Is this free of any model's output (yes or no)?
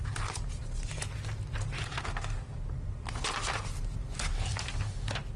yes